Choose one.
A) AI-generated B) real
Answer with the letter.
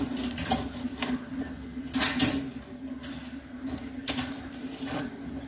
B